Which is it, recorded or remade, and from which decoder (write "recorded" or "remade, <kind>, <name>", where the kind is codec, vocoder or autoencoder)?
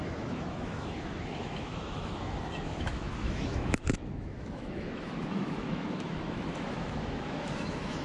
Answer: remade, autoencoder, DAC-VAE